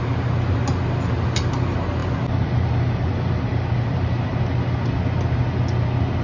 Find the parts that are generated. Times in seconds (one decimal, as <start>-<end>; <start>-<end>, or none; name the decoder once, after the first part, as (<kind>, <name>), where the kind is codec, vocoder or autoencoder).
none